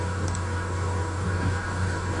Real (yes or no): no